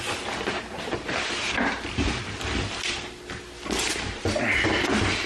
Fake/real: real